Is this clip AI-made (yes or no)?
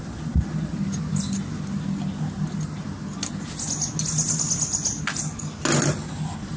no